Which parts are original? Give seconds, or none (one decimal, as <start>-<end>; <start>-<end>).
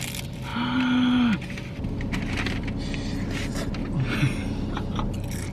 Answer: 0.0-5.5